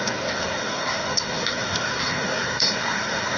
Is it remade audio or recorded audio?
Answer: remade